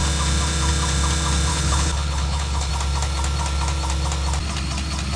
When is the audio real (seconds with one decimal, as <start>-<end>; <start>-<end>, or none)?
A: 0.0-1.5; 2.7-5.2